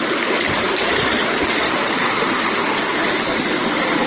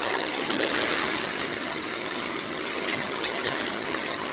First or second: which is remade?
second